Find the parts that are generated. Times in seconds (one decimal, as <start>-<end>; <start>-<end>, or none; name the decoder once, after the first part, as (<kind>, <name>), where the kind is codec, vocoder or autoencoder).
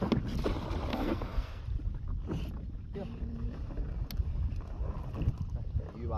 0.9-1.6 (codec, SNAC)